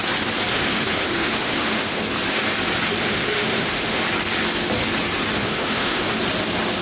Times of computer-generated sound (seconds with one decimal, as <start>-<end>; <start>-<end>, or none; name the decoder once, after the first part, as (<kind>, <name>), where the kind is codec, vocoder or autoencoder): 0.5-2.0 (autoencoder, DAC-VAE); 3.0-4.0; 5.4-6.2